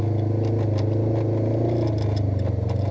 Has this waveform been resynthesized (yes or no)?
no